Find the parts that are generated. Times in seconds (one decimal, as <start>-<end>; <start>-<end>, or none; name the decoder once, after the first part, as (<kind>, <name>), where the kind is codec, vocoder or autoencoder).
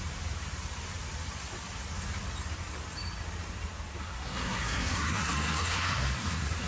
4.0-6.7 (codec, SNAC)